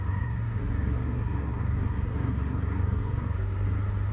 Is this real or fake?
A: fake